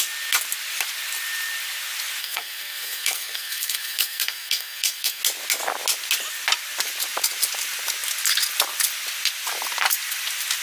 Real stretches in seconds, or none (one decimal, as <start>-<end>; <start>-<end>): 0.0-2.2; 5.2-10.6